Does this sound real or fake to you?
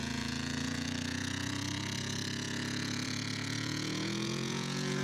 fake